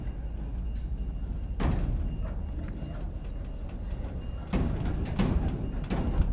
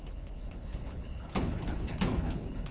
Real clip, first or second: first